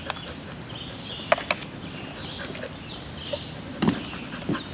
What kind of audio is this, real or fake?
real